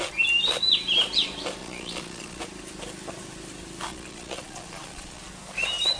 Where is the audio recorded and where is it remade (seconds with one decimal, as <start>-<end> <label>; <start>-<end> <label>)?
0.0-1.6 recorded; 1.6-2.4 remade; 2.4-3.9 recorded; 3.9-5.2 remade; 5.2-6.0 recorded